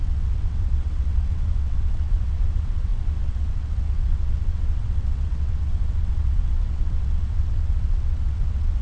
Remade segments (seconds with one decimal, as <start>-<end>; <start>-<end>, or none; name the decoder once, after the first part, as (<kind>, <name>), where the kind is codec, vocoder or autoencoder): 0.0-8.8 (vocoder, WaveNeXt)